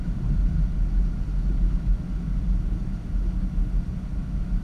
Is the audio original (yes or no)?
yes